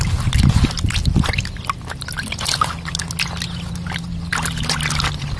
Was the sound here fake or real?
real